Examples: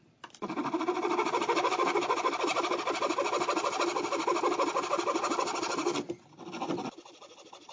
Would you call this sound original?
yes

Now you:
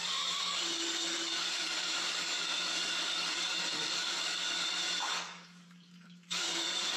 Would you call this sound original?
no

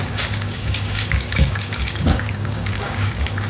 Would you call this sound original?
no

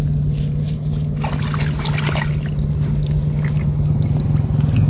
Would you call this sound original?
yes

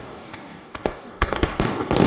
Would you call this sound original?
no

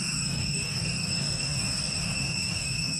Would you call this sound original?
no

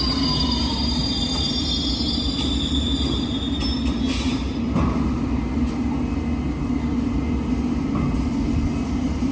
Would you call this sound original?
yes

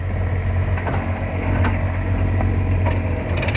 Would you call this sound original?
yes